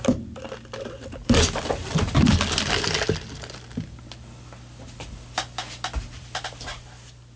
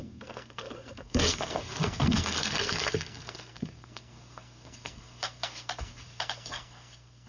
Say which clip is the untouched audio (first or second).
first